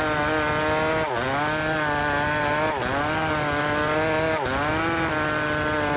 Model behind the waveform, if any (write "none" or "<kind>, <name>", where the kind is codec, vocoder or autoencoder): none